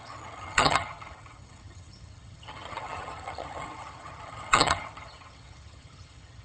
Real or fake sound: fake